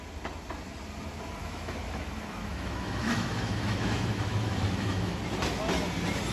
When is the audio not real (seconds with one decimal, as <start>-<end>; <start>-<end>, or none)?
1.4-5.2